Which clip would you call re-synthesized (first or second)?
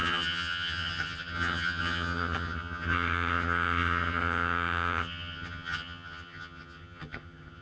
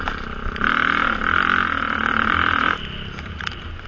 first